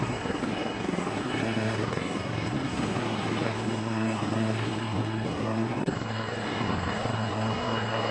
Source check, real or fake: fake